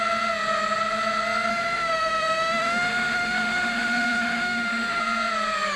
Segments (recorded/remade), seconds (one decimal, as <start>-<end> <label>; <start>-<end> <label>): 0.0-1.5 recorded; 1.5-5.0 remade; 5.0-5.8 recorded